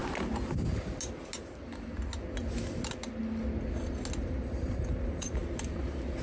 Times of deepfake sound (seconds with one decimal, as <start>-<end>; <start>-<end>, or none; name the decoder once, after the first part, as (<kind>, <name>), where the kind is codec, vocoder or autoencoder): 4.2-5.4 (vocoder, BigVGAN v2)